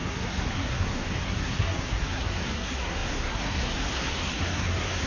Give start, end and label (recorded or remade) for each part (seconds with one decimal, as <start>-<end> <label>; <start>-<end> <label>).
0.0-5.1 remade

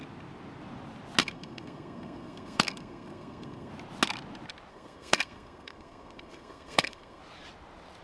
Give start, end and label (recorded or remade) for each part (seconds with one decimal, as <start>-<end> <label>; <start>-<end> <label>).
0.0-1.2 recorded; 1.2-3.7 remade; 3.7-4.7 recorded; 4.7-7.2 remade; 7.2-8.0 recorded

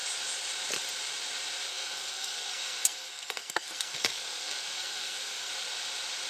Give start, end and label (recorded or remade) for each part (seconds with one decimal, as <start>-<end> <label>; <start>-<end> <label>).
0.0-1.7 recorded; 1.7-5.5 remade; 5.5-6.3 recorded

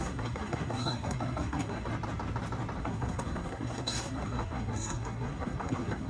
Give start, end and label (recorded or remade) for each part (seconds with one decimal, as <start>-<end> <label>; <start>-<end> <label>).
0.0-1.9 remade; 1.9-2.8 recorded; 2.8-6.1 remade

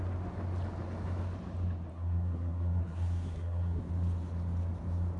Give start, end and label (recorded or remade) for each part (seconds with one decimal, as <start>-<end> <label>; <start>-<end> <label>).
0.0-1.9 recorded; 1.9-3.8 remade; 3.8-5.2 recorded

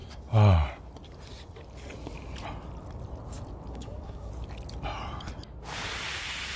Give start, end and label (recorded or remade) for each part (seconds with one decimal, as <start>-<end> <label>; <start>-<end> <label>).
0.0-3.7 recorded; 3.7-4.3 remade; 4.3-6.6 recorded

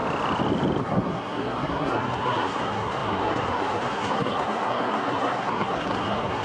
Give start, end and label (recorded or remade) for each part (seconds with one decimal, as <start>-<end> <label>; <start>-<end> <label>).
0.0-0.8 recorded; 0.8-6.4 remade

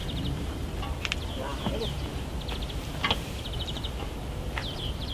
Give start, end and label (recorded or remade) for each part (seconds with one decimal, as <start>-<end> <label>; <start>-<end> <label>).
0.0-5.1 recorded